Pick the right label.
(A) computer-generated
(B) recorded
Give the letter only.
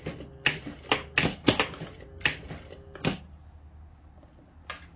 B